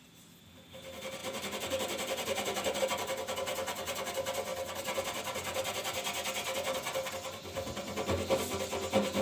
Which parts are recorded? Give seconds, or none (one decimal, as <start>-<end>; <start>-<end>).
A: 0.0-1.2; 2.8-9.2